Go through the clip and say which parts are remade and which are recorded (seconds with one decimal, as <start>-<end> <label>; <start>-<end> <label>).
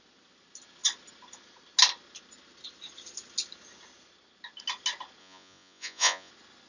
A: 0.0-5.2 recorded; 5.2-6.3 remade; 6.3-6.7 recorded